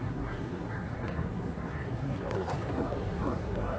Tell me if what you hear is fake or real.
fake